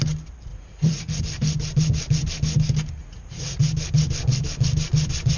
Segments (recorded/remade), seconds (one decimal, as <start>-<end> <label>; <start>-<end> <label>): 0.0-0.5 recorded; 0.5-1.2 remade; 1.2-3.0 recorded; 3.0-3.6 remade; 3.6-5.4 recorded